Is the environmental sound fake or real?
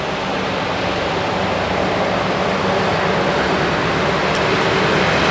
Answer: real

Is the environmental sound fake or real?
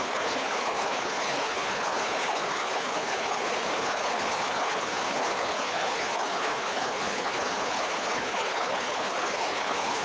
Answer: fake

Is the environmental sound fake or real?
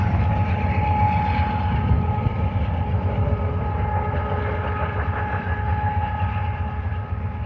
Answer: real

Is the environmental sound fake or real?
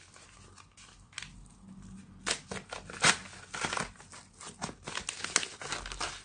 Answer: real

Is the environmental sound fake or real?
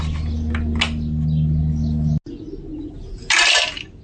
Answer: real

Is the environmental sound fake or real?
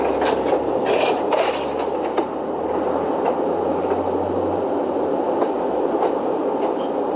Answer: real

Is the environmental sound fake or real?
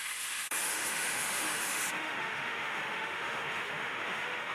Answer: fake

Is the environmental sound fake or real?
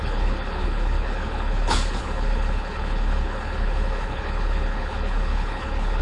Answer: fake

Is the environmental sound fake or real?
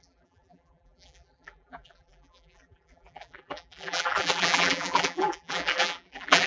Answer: fake